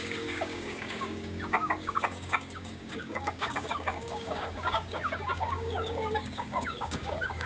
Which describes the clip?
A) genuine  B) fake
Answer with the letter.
B